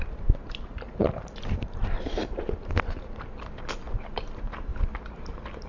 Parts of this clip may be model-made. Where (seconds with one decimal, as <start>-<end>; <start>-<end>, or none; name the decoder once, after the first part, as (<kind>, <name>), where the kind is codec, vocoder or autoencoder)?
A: 0.0-1.8 (vocoder, BigVGAN v2); 3.4-4.7